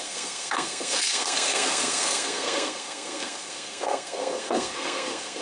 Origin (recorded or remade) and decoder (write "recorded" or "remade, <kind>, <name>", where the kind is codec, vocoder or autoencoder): remade, codec, SNAC